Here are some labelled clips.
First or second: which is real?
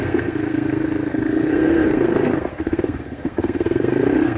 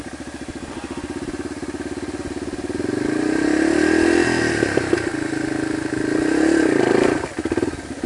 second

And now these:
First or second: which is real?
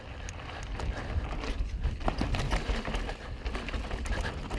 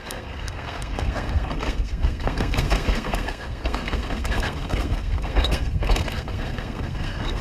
first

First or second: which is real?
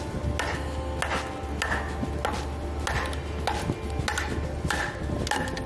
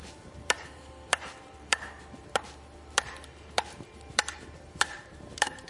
first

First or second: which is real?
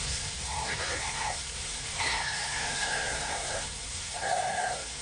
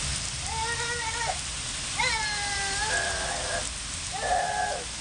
second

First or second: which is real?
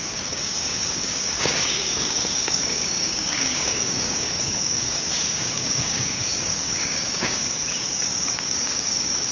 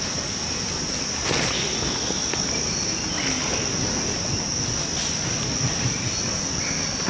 second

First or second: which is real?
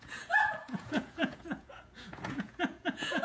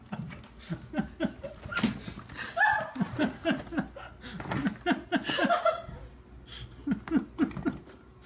second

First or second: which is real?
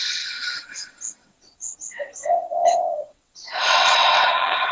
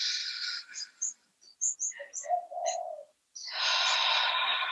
second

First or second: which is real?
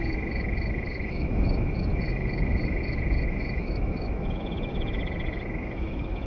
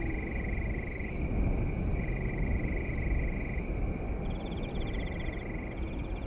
second